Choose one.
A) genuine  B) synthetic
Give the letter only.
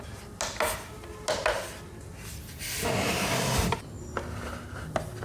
A